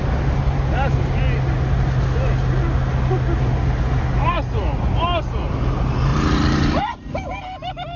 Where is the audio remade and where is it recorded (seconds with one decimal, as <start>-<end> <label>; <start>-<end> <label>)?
0.0-6.1 recorded; 6.1-7.3 remade; 7.3-8.0 recorded